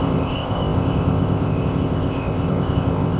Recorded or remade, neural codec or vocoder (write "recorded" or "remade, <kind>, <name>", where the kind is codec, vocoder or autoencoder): remade, codec, ZipCodec